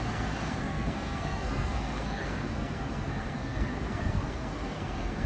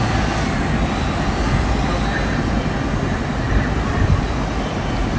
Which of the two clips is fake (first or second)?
first